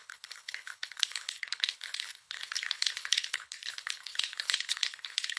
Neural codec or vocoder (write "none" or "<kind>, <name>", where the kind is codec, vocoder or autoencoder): codec, HILCodec